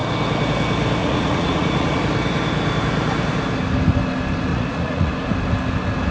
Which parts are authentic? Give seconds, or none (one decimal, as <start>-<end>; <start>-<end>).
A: 0.0-1.0; 2.0-4.5; 5.1-6.1

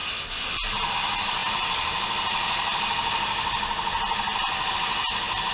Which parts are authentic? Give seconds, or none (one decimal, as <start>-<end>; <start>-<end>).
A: 0.0-5.5

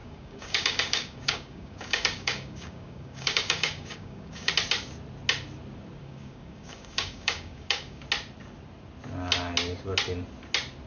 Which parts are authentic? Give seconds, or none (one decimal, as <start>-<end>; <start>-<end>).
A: 4.5-6.0; 8.0-10.9

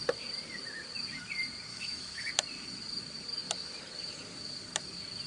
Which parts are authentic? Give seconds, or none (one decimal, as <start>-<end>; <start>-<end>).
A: 0.0-1.7; 2.3-5.3

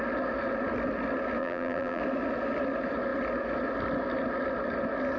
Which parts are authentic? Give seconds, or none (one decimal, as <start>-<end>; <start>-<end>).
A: 0.0-1.4; 2.0-5.2

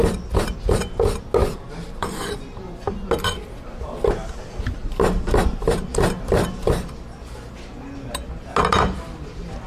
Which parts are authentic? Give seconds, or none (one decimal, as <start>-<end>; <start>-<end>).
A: 0.0-1.4; 2.2-4.8; 7.0-9.7

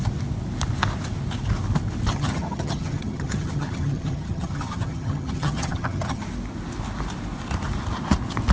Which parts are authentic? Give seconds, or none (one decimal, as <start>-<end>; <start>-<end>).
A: 0.0-2.1; 6.2-8.5

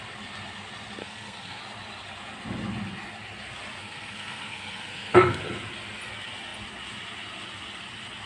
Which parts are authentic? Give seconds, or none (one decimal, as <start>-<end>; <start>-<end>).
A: 0.0-1.0; 1.6-3.8; 5.4-8.3